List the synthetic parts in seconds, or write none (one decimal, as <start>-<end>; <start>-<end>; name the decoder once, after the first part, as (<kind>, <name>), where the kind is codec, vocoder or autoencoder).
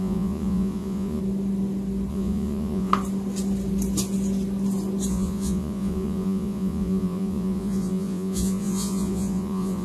0.0-1.2 (vocoder, Vocos); 2.1-2.9; 5.1-9.8